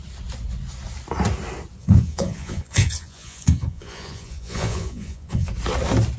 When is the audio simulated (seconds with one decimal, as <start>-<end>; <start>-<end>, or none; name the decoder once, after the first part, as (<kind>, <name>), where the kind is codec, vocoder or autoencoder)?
1.8-5.5 (vocoder, Vocos)